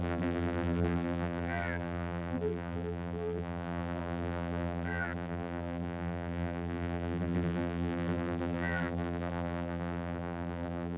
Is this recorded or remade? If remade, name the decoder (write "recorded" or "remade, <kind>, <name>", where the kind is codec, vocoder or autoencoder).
remade, vocoder, BigVGAN v2